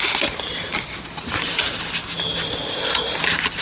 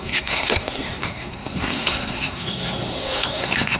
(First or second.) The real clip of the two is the first